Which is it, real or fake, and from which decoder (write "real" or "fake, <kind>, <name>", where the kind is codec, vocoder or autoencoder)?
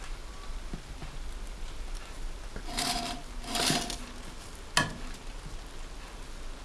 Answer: real